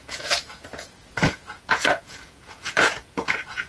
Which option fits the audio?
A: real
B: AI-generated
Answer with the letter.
B